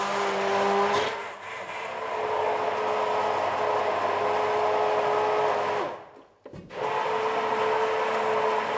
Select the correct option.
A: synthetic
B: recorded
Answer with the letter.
B